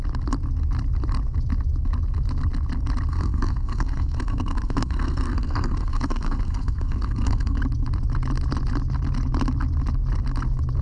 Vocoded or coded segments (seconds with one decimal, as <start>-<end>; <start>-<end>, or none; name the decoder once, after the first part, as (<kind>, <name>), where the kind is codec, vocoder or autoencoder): 3.1-7.6 (codec, SNAC)